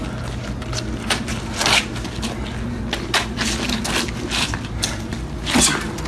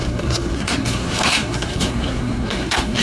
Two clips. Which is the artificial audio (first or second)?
second